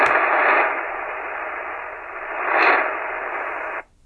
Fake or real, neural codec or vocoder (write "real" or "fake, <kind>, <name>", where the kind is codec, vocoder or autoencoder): real